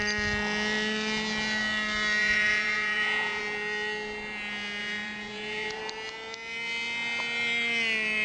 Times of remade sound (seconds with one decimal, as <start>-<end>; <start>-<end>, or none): 2.2-3.4; 4.8-5.8